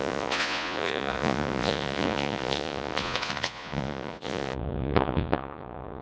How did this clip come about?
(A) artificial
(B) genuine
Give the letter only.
A